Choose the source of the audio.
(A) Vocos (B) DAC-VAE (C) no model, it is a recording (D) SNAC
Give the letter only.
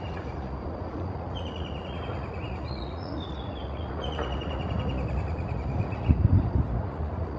A